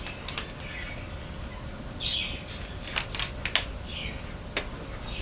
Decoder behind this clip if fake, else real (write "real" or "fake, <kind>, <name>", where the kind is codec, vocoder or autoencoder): real